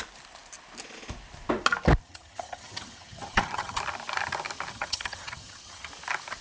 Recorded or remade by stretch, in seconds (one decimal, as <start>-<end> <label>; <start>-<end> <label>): 0.0-2.0 recorded; 2.0-3.8 remade; 3.8-4.7 recorded; 4.7-5.9 remade; 5.9-6.4 recorded